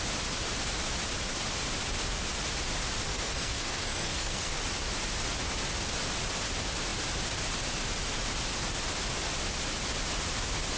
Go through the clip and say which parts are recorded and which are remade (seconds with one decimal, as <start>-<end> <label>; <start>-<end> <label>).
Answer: 0.0-3.1 recorded; 3.1-4.6 remade; 4.6-10.8 recorded